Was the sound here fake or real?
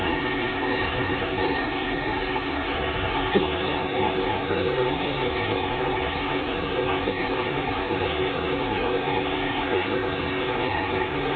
fake